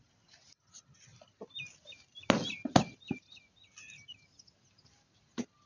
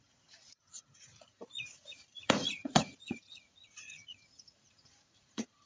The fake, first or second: second